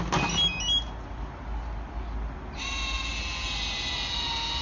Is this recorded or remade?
recorded